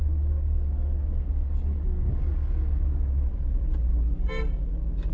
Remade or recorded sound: recorded